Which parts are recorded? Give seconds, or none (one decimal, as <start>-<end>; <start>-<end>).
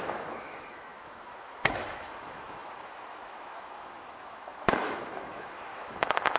none